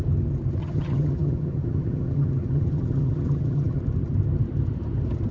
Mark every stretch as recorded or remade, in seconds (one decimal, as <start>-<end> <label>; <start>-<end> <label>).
0.0-0.6 recorded; 0.6-3.8 remade; 3.8-5.3 recorded